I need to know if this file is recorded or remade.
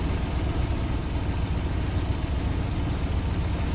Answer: recorded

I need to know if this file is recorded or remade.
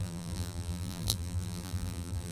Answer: remade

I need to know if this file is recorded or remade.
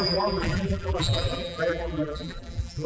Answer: remade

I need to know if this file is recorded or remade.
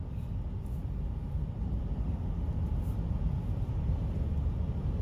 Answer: recorded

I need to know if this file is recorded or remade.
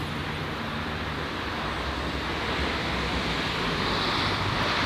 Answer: remade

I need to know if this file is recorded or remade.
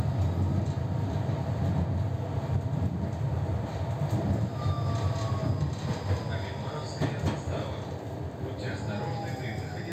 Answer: recorded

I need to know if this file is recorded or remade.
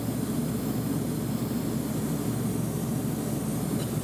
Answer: recorded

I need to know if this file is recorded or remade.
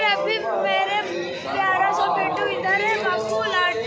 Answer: recorded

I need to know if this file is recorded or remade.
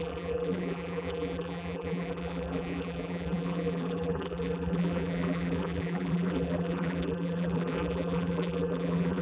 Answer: remade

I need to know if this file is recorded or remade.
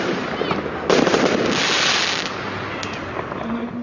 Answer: recorded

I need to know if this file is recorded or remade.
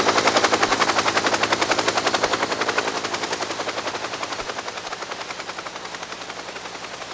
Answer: remade